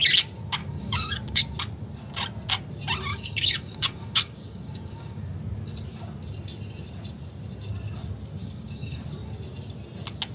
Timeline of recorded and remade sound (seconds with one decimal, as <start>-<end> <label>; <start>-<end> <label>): 0.0-0.6 recorded; 0.6-1.4 remade; 1.4-3.1 recorded; 3.1-5.2 remade; 5.2-8.4 recorded; 8.4-9.0 remade; 9.0-10.3 recorded